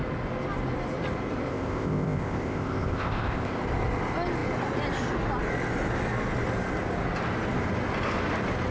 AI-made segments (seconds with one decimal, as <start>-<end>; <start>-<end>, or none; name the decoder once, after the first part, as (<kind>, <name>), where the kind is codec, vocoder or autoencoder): 1.5-3.6 (codec, ZipCodec)